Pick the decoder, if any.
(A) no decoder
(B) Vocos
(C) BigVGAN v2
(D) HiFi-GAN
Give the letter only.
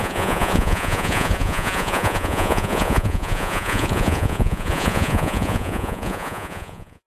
B